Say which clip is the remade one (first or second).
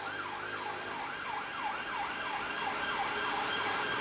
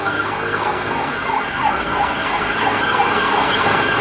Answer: second